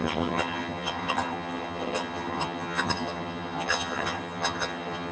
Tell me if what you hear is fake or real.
fake